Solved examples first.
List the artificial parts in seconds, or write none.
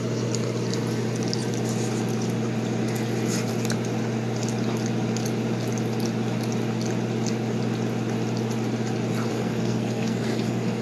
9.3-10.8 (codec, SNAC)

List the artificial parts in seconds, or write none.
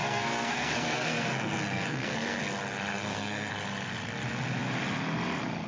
0.0-2.4 (codec, SNAC); 2.9-3.5